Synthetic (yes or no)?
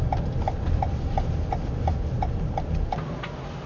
no